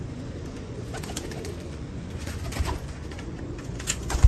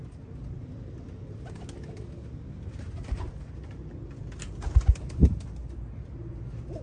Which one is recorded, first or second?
second